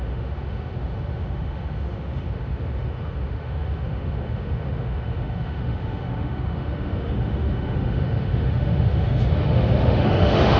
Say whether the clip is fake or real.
fake